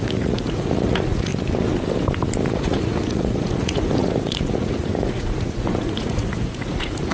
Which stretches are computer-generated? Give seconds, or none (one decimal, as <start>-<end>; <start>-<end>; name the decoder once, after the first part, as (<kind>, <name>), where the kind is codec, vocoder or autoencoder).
0.0-1.3 (vocoder, Vocos); 2.5-7.1